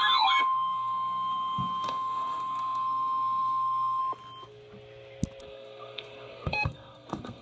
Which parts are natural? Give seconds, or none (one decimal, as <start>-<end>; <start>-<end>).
4.0-5.4